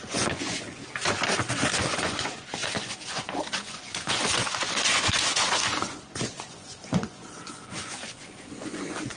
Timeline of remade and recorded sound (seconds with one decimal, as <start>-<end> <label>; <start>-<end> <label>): 0.0-0.8 remade; 0.8-1.5 recorded; 1.5-9.2 remade